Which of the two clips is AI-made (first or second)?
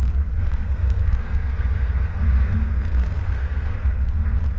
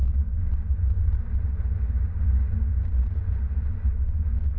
first